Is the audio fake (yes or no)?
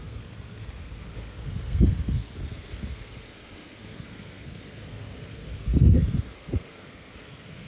yes